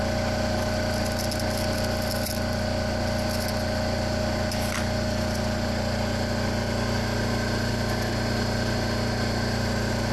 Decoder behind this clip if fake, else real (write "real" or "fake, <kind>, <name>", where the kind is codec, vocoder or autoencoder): real